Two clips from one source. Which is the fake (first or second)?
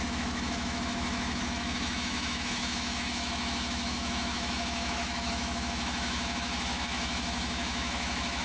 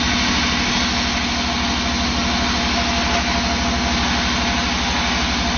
first